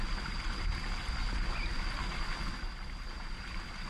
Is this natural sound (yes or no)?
yes